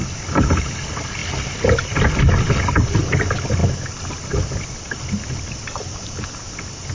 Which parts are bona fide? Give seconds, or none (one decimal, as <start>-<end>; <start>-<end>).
0.0-6.9